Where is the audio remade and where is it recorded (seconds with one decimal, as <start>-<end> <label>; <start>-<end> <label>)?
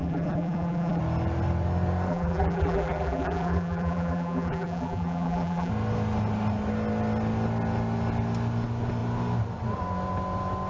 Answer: 0.0-1.0 remade; 1.0-2.1 recorded; 2.1-5.7 remade; 5.7-10.7 recorded